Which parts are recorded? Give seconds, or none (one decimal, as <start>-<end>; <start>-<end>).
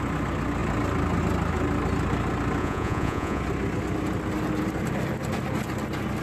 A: 0.0-2.6; 3.4-6.2